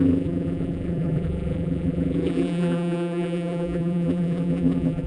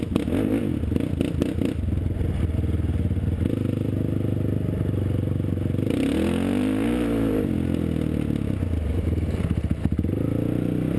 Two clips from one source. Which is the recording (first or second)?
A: second